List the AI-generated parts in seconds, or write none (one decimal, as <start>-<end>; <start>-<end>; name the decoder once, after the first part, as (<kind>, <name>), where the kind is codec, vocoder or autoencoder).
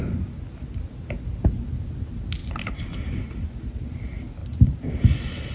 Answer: 2.4-3.2 (vocoder, BigVGAN v2); 4.4-4.9